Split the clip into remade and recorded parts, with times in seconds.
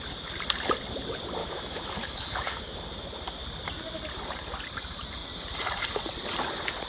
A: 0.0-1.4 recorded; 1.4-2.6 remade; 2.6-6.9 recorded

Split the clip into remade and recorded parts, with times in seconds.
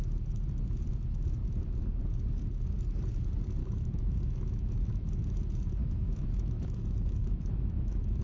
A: 0.0-3.6 recorded; 3.6-5.1 remade; 5.1-5.8 recorded; 5.8-8.2 remade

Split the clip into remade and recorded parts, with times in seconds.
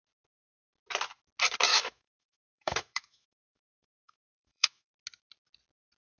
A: 0.0-1.7 recorded; 1.7-4.9 remade; 4.9-6.2 recorded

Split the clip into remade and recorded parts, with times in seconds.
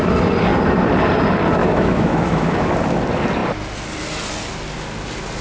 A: 0.0-1.6 recorded; 1.6-2.7 remade; 2.7-5.4 recorded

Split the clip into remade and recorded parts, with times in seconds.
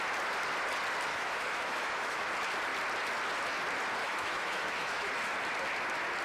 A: 0.0-1.1 recorded; 1.1-2.3 remade; 2.3-4.0 recorded; 4.0-5.1 remade; 5.1-6.2 recorded